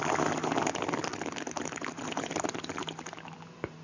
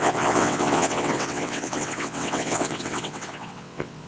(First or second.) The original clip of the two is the first